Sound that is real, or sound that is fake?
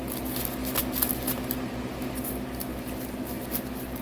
real